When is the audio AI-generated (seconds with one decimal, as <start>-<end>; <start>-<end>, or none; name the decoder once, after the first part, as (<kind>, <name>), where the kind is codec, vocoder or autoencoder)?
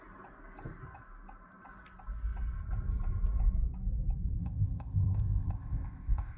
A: 4.4-6.4 (codec, ZipCodec)